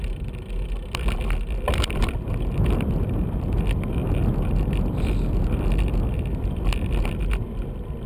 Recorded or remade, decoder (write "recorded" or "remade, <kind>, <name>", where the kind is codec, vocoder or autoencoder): recorded